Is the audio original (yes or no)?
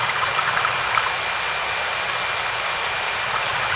yes